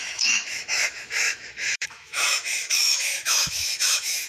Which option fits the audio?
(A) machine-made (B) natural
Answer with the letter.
A